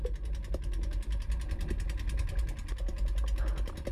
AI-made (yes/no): no